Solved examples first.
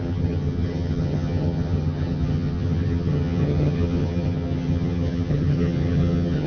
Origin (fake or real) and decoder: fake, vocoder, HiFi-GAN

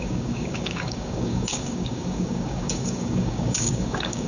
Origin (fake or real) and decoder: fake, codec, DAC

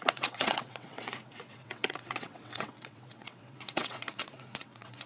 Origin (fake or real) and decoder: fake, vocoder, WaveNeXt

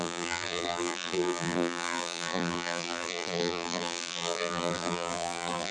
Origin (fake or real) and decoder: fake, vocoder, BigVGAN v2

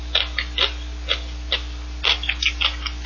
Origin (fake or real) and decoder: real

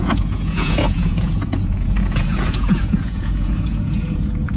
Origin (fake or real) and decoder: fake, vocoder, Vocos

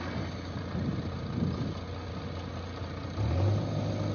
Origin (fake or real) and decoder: real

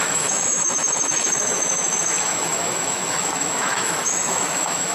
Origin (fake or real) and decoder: fake, autoencoder, DAC-VAE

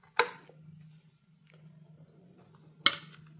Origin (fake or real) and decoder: real